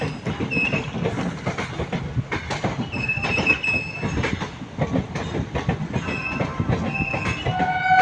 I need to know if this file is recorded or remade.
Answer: recorded